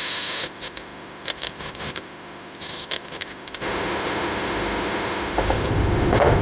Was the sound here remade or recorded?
remade